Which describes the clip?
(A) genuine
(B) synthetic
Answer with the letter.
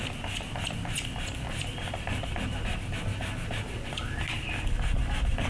A